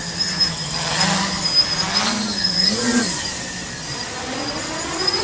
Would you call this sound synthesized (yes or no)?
no